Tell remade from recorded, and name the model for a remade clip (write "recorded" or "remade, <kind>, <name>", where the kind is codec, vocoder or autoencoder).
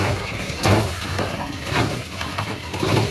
remade, codec, SNAC